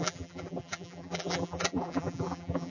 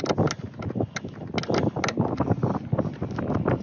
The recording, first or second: second